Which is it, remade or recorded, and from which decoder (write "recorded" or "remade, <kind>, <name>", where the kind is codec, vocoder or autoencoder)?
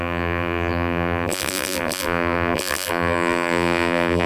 remade, vocoder, BigVGAN v2